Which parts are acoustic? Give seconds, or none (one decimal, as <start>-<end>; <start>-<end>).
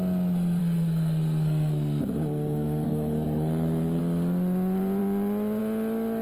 0.0-0.6; 4.0-6.2